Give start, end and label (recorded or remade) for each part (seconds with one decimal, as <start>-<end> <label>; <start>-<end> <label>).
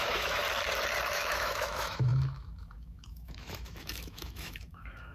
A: 0.0-0.4 remade; 0.4-1.1 recorded; 1.1-5.1 remade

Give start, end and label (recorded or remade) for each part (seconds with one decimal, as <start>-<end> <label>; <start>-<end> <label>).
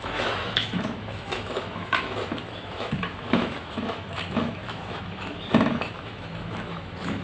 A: 0.0-7.2 remade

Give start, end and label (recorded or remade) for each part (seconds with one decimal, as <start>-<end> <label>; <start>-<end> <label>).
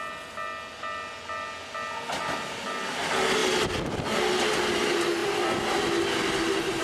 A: 0.0-6.8 recorded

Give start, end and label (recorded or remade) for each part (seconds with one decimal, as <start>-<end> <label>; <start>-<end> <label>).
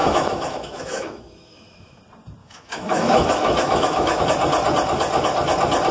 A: 0.0-2.0 remade; 2.0-2.4 recorded; 2.4-4.2 remade; 4.2-5.9 recorded